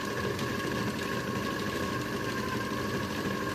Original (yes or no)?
yes